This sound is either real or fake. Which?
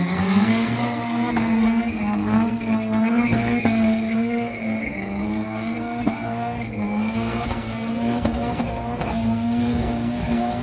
fake